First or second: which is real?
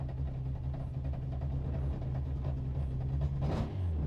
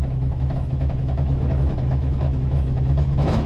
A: first